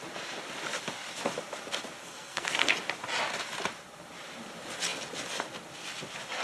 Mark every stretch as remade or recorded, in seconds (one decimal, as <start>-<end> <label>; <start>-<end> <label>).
0.0-2.0 recorded; 2.0-2.7 remade; 2.7-6.4 recorded